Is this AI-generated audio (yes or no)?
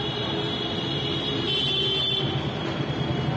no